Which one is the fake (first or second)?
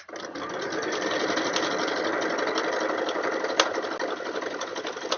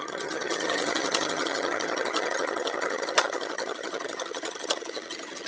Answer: second